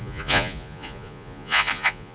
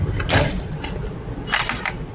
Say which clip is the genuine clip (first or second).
second